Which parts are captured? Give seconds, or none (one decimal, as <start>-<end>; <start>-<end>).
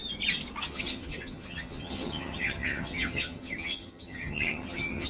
0.0-0.6